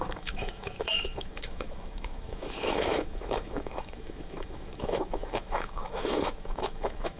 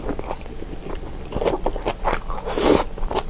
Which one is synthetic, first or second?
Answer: first